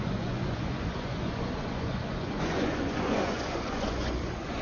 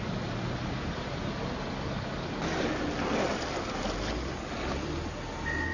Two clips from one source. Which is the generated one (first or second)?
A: first